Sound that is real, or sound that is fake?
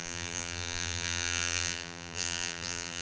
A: fake